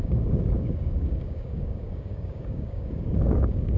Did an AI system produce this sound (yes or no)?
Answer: yes